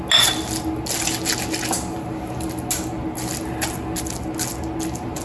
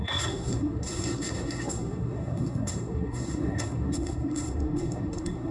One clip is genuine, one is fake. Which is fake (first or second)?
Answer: second